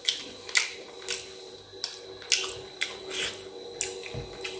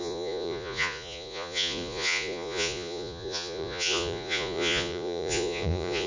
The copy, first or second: second